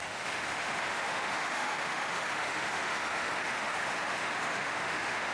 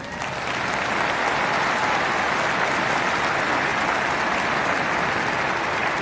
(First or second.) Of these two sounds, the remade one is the first